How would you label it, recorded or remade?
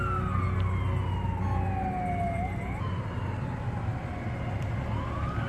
recorded